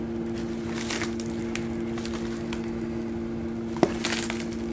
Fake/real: real